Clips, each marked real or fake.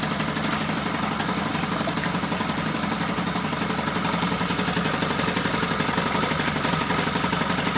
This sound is real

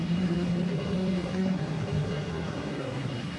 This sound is fake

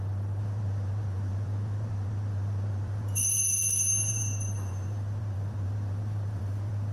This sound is fake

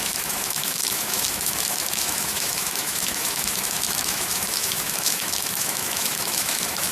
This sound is fake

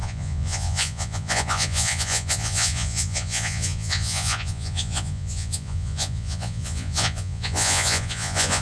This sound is fake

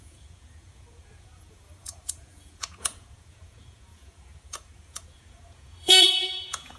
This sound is fake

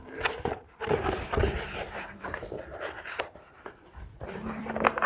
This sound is fake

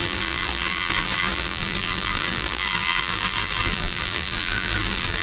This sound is fake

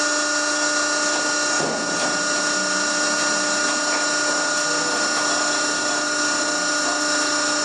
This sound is real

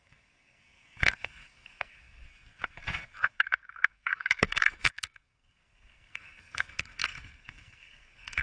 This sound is fake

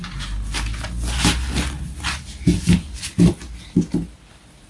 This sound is real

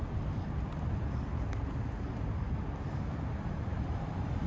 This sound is real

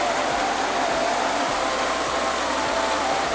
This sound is real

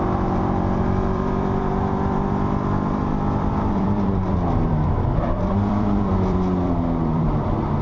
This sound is fake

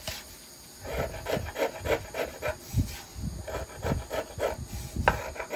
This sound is real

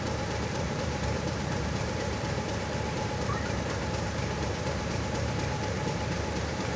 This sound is fake